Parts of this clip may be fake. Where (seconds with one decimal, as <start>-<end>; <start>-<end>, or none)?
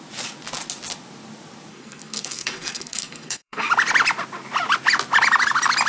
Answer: 1.7-3.7